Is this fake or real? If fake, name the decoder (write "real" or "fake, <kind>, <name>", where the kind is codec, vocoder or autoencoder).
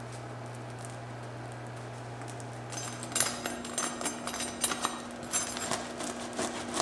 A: real